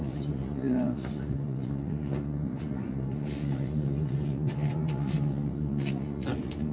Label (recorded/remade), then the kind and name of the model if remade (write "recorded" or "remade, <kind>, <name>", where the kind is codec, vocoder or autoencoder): remade, vocoder, Vocos